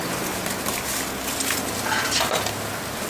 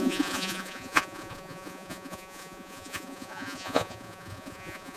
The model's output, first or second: second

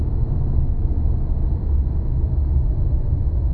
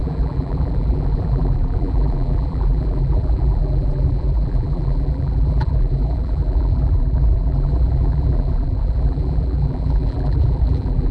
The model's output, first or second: second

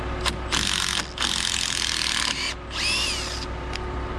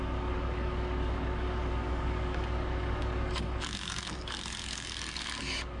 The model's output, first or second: second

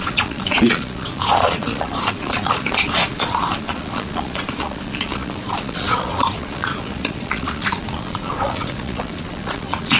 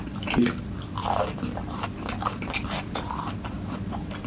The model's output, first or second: first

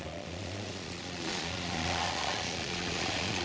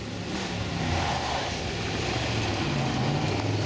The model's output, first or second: first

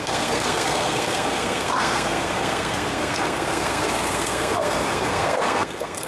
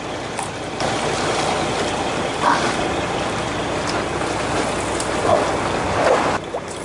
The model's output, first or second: first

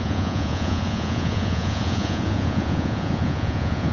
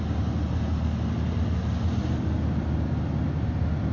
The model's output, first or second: first